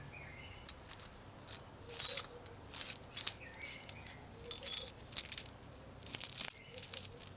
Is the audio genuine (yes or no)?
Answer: yes